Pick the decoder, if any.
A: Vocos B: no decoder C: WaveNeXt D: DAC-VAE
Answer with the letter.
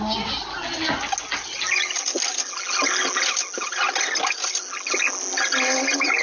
B